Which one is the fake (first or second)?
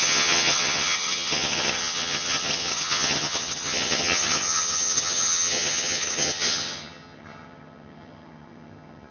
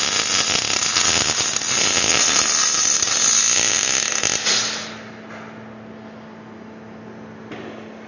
first